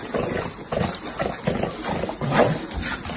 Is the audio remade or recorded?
recorded